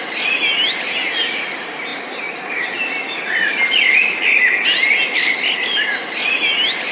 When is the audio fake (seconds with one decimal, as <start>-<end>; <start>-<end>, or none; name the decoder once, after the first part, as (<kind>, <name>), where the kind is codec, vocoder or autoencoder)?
none